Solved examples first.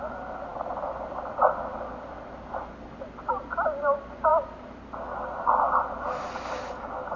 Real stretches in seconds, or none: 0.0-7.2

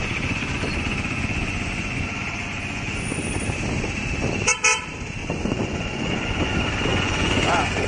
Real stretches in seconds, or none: 3.2-5.2; 6.5-6.9

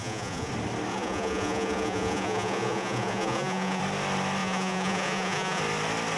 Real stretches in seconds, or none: 0.5-0.9; 3.8-4.4; 5.6-6.2

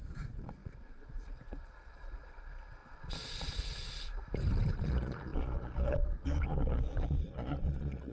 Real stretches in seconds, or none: 4.2-4.8

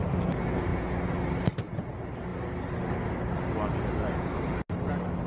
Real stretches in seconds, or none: 0.0-5.3

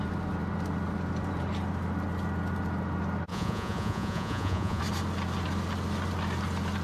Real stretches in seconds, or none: 0.0-3.3; 4.8-6.8

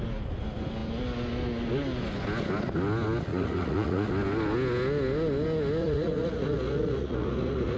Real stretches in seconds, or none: 0.0-3.3; 4.1-5.8

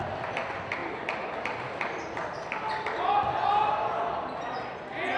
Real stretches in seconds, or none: 0.0-5.2